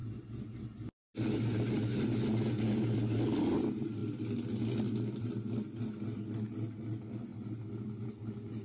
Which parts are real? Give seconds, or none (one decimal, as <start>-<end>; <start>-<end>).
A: 0.0-8.6